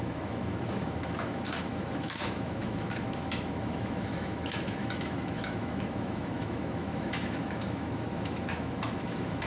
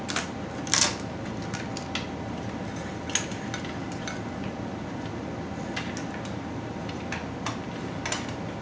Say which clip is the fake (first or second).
first